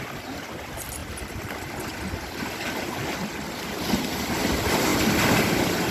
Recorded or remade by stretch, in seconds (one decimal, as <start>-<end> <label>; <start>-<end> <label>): 0.0-5.9 recorded